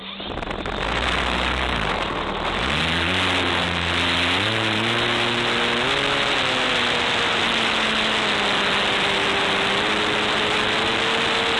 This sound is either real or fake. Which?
real